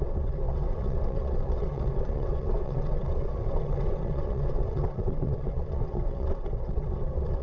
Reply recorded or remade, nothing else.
remade